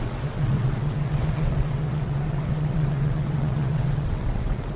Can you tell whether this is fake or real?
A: fake